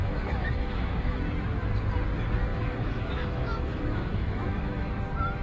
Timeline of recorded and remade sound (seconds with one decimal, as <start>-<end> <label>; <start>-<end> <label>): 0.0-1.2 remade; 1.2-2.5 recorded; 2.5-4.9 remade; 4.9-5.4 recorded